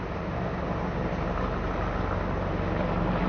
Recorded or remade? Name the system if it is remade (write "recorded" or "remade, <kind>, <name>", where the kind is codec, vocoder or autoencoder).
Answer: recorded